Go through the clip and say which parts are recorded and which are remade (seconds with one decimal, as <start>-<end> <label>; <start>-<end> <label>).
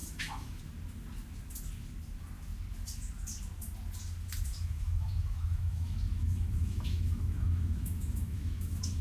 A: 0.0-0.6 remade; 0.6-4.5 recorded; 4.5-9.0 remade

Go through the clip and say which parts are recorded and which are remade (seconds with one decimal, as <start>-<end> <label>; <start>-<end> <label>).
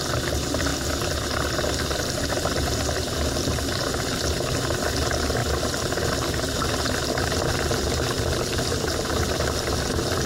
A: 0.0-10.3 recorded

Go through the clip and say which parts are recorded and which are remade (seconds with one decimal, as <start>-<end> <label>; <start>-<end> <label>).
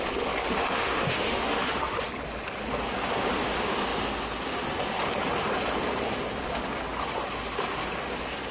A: 0.0-0.4 recorded; 0.4-2.0 remade; 2.0-8.5 recorded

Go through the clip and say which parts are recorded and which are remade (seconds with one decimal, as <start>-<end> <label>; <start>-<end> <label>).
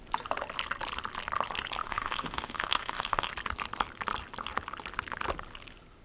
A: 0.0-1.8 recorded; 1.8-3.3 remade; 3.3-6.0 recorded